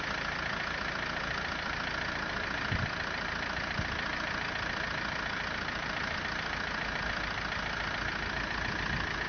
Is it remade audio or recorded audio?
recorded